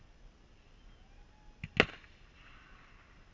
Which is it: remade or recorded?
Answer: recorded